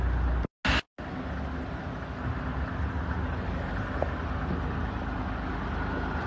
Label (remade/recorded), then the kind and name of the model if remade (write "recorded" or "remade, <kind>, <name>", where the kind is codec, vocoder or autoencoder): recorded